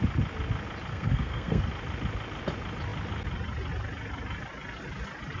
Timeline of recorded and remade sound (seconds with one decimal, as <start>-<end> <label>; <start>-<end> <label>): 0.0-0.9 recorded; 0.9-1.7 remade; 1.7-5.4 recorded